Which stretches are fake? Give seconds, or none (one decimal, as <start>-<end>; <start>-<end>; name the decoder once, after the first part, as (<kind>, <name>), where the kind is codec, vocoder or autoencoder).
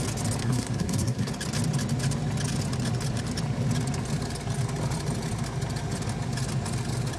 0.4-1.3 (codec, SNAC)